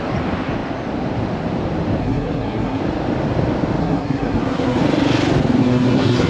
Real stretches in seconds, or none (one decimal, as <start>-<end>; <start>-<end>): 0.0-2.0; 2.8-3.8; 4.8-5.6